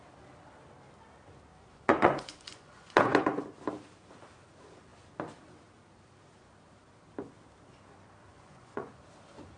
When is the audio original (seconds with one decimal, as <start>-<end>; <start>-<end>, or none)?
0.0-1.5; 3.4-8.3; 9.0-9.6